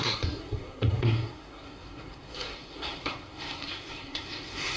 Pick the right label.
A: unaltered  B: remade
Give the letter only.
B